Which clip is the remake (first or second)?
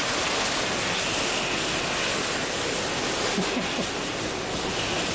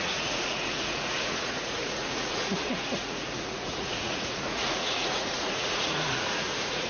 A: second